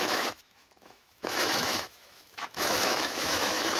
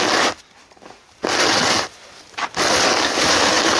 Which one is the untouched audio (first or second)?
second